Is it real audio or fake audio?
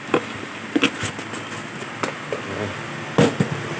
real